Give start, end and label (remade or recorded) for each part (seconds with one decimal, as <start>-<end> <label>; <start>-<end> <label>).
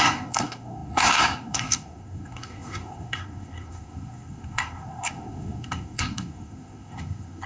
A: 0.0-7.5 remade